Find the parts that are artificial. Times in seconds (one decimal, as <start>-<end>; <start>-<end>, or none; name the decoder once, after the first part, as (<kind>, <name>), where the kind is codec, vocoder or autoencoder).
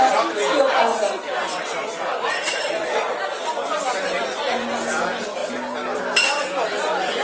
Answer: 0.9-5.0 (vocoder, BigVGAN v2)